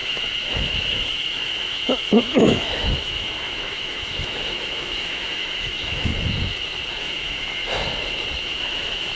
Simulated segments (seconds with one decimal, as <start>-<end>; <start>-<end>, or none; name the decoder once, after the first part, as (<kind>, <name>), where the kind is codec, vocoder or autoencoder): 0.0-6.1 (autoencoder, DAC-VAE); 7.0-7.6; 8.4-9.2